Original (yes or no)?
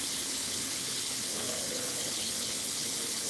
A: no